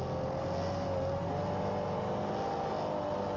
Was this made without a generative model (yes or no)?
yes